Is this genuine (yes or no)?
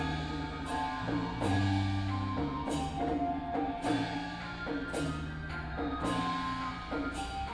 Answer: yes